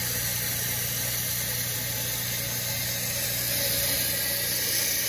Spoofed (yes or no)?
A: no